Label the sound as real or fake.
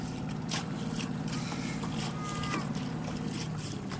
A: real